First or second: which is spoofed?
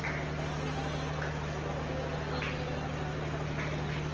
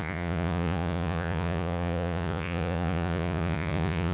second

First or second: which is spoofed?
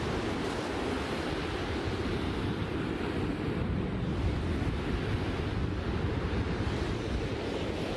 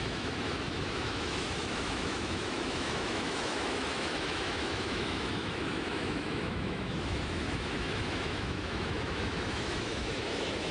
second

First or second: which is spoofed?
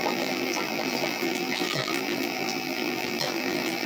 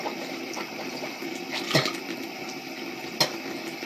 first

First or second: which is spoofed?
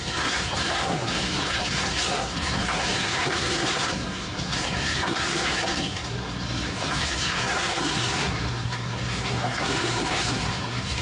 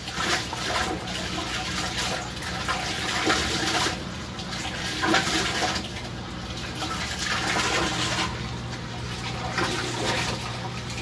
first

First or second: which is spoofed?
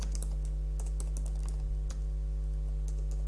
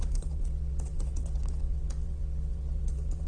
second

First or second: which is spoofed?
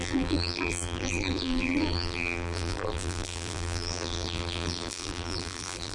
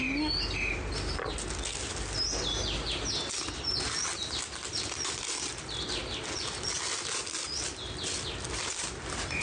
first